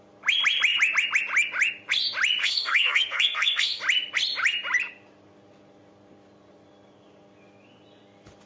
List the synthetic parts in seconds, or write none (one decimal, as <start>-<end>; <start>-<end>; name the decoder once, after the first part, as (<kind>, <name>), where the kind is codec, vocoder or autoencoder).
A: 2.4-3.8 (codec, SNAC)